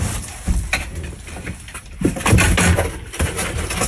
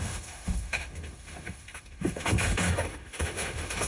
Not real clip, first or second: second